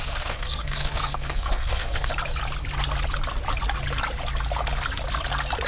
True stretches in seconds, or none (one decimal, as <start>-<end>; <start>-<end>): 2.1-5.7